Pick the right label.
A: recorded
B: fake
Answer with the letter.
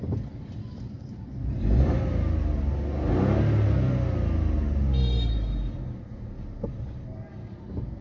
A